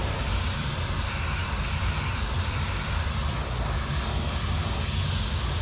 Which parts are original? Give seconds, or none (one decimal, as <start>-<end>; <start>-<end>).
0.6-1.4; 4.3-5.6